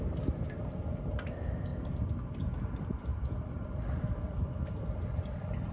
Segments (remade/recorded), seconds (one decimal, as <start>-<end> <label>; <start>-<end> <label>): 0.0-3.1 recorded; 3.1-4.5 remade; 4.5-5.7 recorded